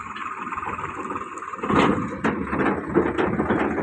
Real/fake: real